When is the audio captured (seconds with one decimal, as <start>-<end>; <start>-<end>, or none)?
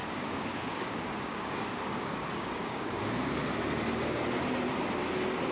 2.9-5.5